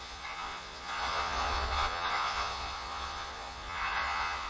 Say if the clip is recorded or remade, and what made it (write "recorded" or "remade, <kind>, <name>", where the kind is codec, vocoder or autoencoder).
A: remade, vocoder, Vocos